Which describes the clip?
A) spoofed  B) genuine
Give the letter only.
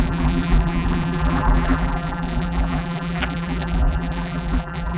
A